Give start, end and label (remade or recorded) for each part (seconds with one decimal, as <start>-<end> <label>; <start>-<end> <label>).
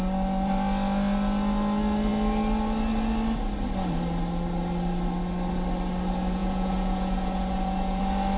0.0-6.4 recorded; 6.4-8.0 remade; 8.0-8.4 recorded